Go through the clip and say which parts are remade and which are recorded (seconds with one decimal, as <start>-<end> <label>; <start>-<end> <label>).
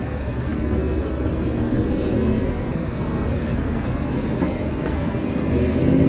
0.0-6.1 remade